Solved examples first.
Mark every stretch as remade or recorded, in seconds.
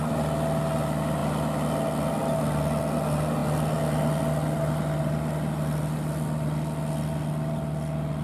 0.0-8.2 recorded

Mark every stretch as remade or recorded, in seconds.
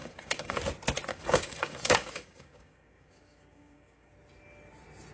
0.0-0.6 remade; 0.6-1.1 recorded; 1.1-4.1 remade; 4.1-5.1 recorded